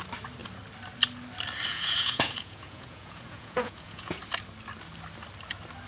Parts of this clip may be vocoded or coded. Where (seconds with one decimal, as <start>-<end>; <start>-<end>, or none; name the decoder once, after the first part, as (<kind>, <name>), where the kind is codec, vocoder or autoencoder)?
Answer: 1.7-4.2 (vocoder, Vocos)